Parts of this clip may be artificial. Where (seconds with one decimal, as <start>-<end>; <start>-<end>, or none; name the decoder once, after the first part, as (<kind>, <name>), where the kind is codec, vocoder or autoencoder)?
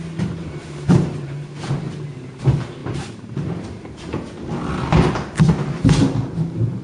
0.4-1.5 (vocoder, BigVGAN v2); 2.8-3.5